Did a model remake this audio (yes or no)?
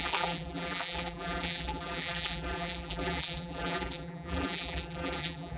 yes